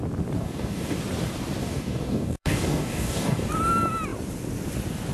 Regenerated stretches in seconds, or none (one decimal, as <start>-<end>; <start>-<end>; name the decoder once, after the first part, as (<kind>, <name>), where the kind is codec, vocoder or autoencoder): 0.4-1.0 (codec, DAC); 1.6-3.5